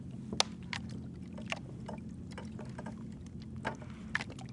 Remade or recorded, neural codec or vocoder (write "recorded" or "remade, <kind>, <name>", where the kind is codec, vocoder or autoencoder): recorded